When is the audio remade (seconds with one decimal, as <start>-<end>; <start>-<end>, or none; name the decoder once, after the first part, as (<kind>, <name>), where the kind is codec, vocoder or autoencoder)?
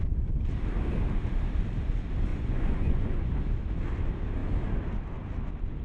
2.3-3.3 (vocoder, Vocos)